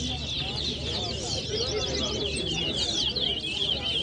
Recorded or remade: recorded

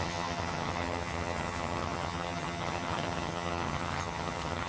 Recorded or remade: remade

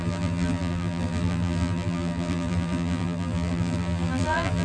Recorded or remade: remade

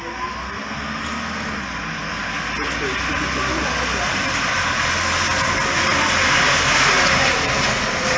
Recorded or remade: recorded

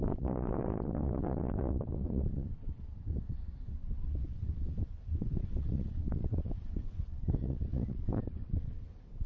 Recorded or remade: remade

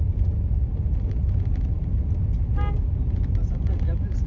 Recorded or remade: recorded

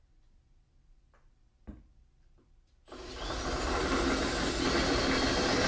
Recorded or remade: recorded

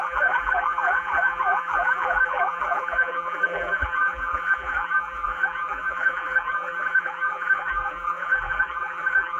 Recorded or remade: remade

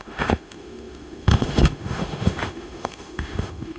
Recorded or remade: remade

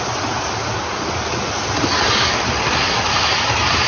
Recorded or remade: recorded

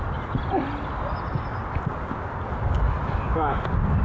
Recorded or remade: recorded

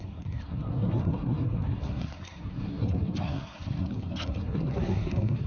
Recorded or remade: remade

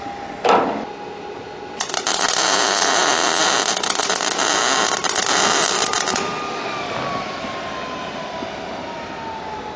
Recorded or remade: recorded